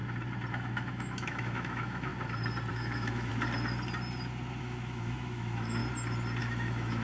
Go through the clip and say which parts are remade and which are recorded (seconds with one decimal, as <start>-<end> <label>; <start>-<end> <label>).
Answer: 0.0-0.5 recorded; 0.5-2.1 remade; 2.1-2.7 recorded; 2.7-3.3 remade; 3.3-4.6 recorded; 4.6-5.8 remade; 5.8-6.4 recorded; 6.4-7.0 remade